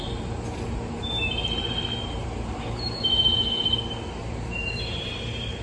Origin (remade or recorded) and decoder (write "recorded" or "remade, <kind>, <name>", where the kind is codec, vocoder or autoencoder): recorded